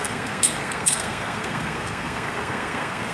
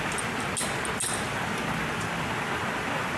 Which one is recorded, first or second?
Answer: second